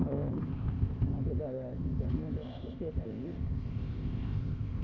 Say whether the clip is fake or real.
fake